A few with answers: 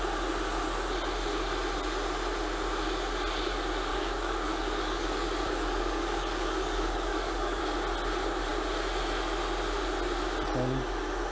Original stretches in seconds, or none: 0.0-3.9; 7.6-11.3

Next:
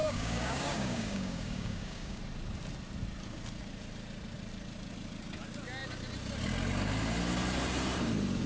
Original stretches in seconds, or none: 2.2-8.5

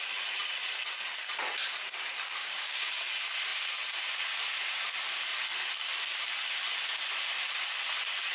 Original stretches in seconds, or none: 0.0-2.4; 2.9-8.3

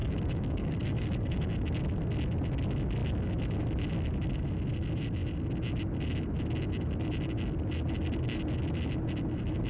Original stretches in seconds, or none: 1.5-9.7

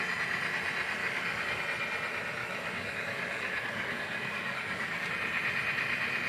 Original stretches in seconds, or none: 0.0-1.0; 1.6-2.4; 5.1-6.3